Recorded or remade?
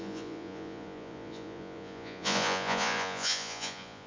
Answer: remade